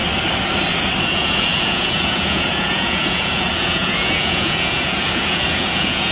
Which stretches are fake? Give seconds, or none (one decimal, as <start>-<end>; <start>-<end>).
1.0-6.1